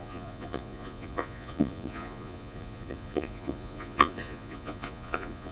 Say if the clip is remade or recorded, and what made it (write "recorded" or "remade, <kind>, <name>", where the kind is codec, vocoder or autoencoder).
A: remade, vocoder, Vocos